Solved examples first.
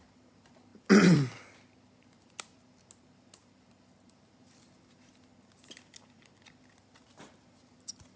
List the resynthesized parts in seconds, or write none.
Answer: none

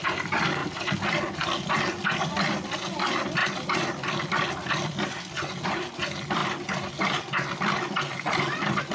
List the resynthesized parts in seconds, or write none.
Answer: none

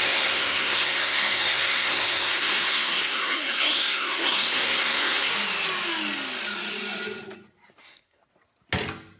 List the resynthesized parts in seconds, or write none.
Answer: 0.0-5.3; 7.8-8.2

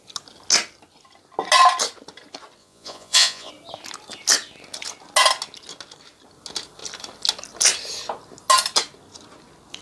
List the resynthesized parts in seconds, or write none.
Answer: 2.6-3.5

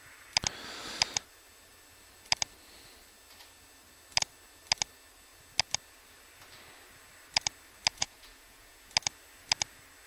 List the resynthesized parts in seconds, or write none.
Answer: 7.9-8.9

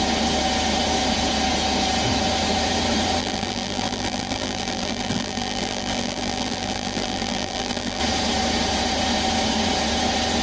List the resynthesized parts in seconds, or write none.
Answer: 3.2-8.0

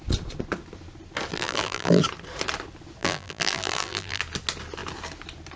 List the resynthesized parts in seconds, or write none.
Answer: 1.3-2.0; 3.0-4.2